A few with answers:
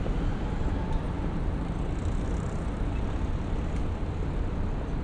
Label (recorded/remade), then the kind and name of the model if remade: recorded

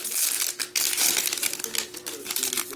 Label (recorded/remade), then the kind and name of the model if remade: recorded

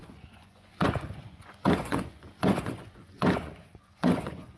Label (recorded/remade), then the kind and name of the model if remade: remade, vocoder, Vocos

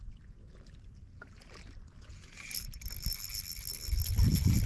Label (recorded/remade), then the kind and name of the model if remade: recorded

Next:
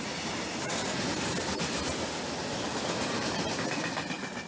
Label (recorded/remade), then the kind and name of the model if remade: recorded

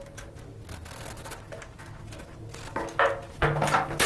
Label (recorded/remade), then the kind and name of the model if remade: recorded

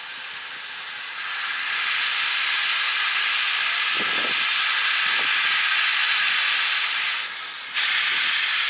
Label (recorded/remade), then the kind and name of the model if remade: recorded